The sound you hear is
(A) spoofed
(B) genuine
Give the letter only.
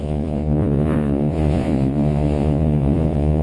A